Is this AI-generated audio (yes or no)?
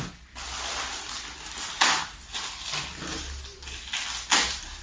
no